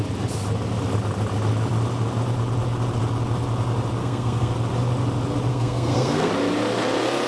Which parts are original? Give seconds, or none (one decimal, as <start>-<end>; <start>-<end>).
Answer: 0.0-4.0; 4.5-5.5; 6.3-7.3